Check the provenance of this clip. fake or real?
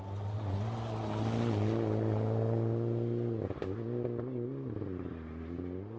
real